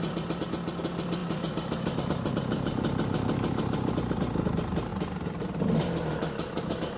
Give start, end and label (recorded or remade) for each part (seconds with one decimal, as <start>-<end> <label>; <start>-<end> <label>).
0.0-7.0 recorded